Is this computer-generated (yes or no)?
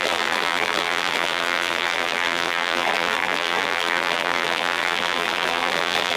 yes